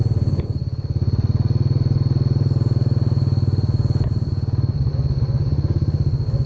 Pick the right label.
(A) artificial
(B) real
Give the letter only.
B